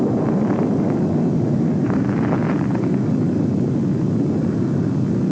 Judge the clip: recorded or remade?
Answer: recorded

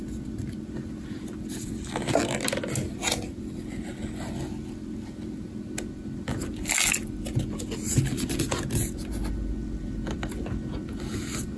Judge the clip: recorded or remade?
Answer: recorded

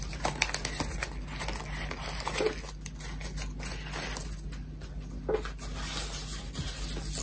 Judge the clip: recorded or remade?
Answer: recorded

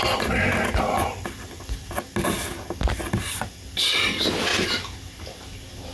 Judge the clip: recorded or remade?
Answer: recorded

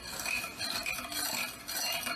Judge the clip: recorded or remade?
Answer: recorded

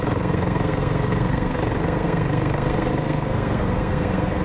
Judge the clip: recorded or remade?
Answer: remade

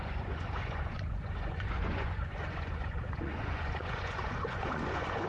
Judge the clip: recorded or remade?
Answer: remade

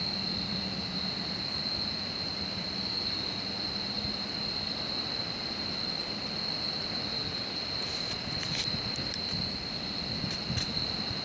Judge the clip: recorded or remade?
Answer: recorded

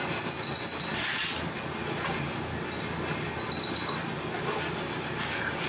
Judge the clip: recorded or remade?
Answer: recorded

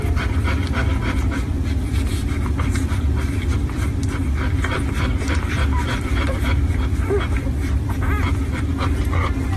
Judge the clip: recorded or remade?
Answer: remade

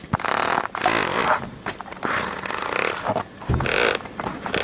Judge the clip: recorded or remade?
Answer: recorded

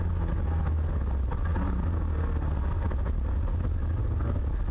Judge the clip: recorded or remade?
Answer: recorded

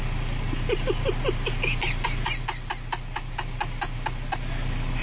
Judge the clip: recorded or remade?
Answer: recorded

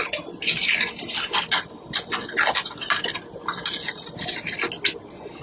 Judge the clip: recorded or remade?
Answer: recorded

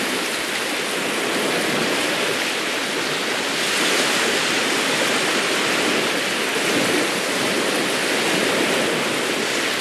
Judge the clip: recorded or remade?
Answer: recorded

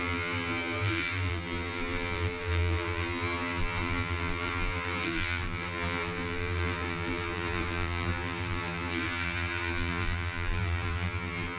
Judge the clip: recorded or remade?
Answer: remade